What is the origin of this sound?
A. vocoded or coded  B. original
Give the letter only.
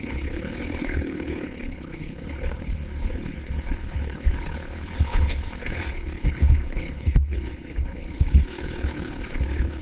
A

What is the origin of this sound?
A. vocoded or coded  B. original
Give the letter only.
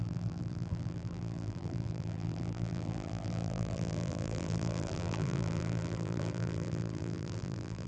A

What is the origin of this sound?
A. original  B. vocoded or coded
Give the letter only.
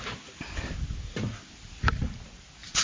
A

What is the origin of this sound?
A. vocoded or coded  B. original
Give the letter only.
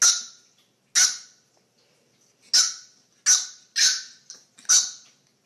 B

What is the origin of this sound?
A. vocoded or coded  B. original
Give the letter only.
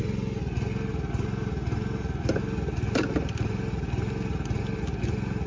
B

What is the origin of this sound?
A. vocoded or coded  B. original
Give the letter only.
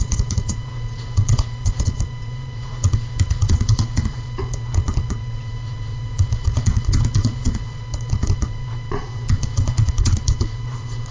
A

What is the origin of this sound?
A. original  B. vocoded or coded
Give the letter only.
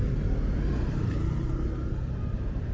A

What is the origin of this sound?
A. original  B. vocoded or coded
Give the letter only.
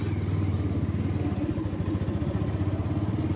A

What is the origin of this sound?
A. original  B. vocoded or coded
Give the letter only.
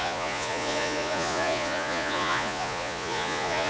B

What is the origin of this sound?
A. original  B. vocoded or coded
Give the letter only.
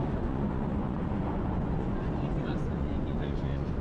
B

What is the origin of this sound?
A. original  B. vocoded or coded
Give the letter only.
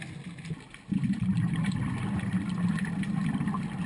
A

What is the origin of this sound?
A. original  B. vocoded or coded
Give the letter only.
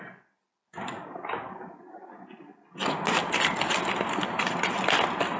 A